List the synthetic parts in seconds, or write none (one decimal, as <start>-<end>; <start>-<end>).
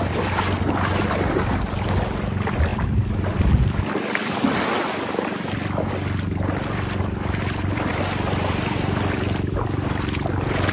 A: none